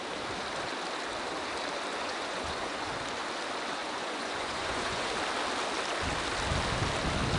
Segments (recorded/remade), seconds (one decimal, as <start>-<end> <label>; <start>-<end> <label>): 0.0-1.9 recorded; 1.9-3.0 remade; 3.0-3.8 recorded; 3.8-5.1 remade; 5.1-7.4 recorded